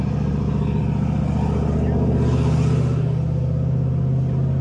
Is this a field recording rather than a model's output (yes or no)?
yes